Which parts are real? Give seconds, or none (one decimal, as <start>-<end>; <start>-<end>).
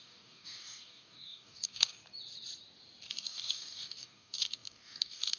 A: 2.0-3.1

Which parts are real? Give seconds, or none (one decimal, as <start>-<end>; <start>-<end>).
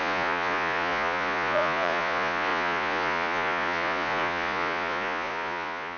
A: none